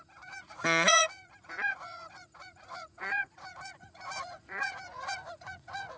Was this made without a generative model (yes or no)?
no